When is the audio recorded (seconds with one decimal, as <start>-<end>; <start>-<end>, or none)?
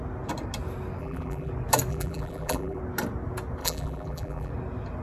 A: 0.0-1.0; 1.5-1.9; 2.8-3.6; 4.5-5.0